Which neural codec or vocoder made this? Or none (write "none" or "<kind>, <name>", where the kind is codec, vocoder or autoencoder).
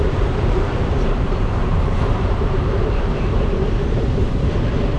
vocoder, BigVGAN v2